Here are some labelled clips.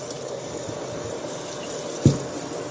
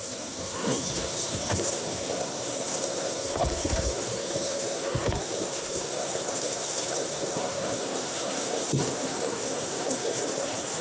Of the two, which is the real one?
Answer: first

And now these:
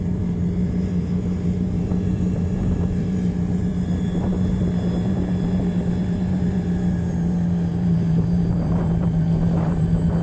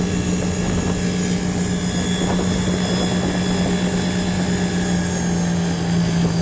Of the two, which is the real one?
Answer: second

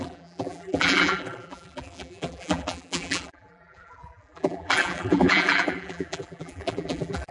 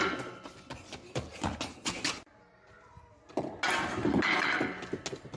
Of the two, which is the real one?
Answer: second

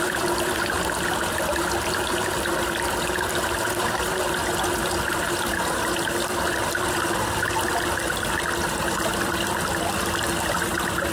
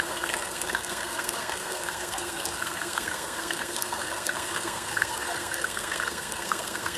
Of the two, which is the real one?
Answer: first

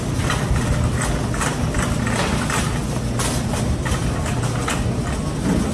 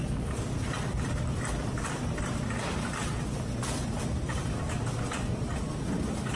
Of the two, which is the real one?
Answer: first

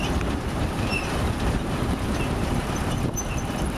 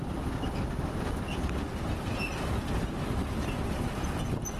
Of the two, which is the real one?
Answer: second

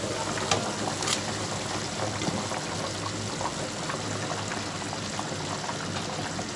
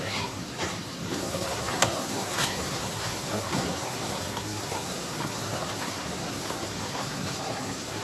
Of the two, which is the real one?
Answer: first